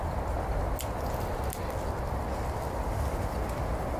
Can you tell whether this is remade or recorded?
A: recorded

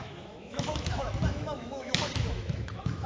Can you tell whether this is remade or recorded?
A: remade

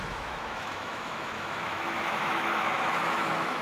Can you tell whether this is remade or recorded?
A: remade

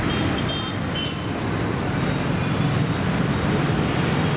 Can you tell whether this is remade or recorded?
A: recorded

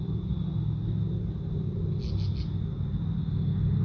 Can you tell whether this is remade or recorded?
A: recorded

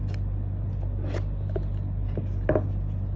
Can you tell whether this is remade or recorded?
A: recorded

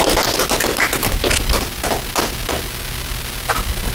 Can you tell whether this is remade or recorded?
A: recorded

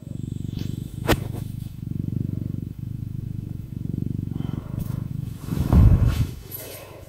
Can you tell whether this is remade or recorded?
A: remade